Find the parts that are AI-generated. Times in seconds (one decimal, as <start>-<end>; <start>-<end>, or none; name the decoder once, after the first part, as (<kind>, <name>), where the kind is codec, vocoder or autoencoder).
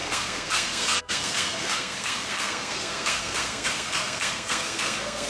0.0-5.3 (codec, SNAC)